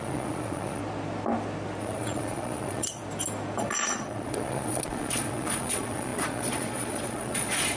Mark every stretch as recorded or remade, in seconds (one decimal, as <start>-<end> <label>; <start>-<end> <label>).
0.0-0.8 remade; 0.8-1.8 recorded; 1.8-3.0 remade; 3.0-3.6 recorded; 3.6-7.8 remade